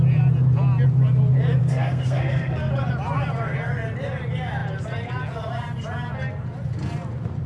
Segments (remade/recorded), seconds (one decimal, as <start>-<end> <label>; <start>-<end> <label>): 0.0-1.6 recorded; 1.6-2.7 remade; 2.7-7.5 recorded